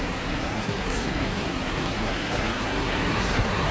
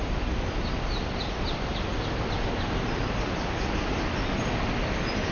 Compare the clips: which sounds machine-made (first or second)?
first